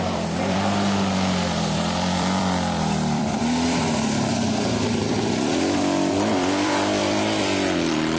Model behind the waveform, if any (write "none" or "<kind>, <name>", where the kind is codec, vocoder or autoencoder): vocoder, BigVGAN v2